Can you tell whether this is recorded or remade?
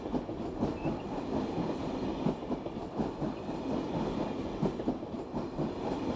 recorded